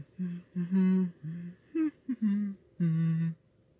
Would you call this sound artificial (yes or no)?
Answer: no